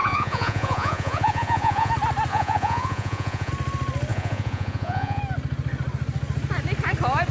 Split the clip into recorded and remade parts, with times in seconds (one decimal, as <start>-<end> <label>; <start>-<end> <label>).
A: 0.0-1.9 remade; 1.9-2.3 recorded; 2.3-3.5 remade; 3.5-4.1 recorded; 4.1-5.2 remade; 5.2-7.3 recorded